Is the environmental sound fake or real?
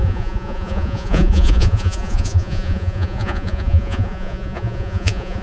fake